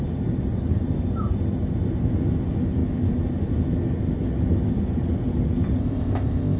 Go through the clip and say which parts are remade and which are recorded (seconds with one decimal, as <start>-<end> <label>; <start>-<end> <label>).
0.0-5.8 recorded; 5.8-6.6 remade